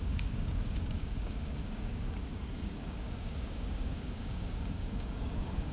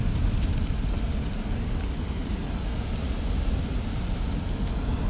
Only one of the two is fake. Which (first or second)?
first